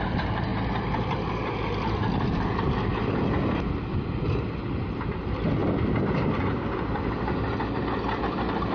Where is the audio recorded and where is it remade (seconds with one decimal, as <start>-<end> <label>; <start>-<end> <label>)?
0.0-2.9 remade; 2.9-4.6 recorded; 4.6-5.6 remade; 5.6-8.2 recorded; 8.2-8.7 remade